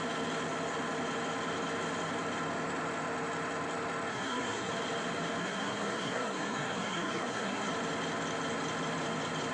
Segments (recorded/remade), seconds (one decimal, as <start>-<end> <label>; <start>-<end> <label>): 0.0-4.1 recorded; 4.1-4.7 remade; 4.7-5.4 recorded; 5.4-7.7 remade; 7.7-9.5 recorded